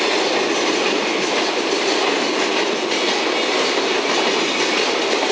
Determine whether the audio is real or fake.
real